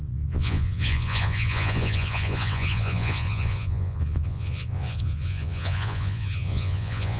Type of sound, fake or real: fake